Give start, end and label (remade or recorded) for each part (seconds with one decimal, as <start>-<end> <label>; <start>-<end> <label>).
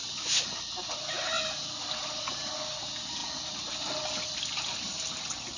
0.0-5.6 recorded